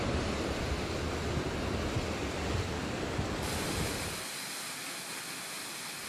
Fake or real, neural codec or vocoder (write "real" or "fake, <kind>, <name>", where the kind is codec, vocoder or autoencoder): real